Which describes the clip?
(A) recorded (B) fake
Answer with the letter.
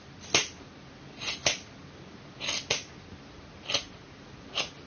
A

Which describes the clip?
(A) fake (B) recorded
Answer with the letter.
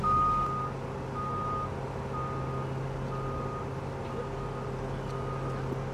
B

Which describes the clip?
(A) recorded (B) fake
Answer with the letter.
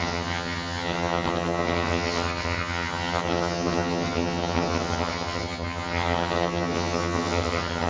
B